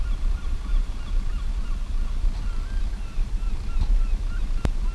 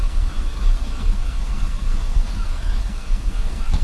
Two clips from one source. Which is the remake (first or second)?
second